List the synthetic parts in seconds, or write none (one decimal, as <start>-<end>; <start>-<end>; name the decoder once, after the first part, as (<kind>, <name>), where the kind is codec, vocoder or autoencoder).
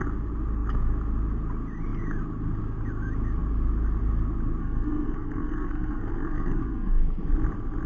4.6-7.0 (codec, SNAC)